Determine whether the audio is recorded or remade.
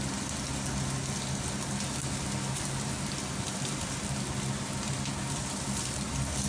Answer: recorded